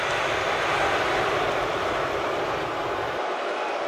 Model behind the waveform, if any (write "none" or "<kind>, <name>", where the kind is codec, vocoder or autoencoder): vocoder, BigVGAN v2